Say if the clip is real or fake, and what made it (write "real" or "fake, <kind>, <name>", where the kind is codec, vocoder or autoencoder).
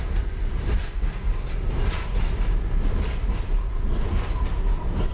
real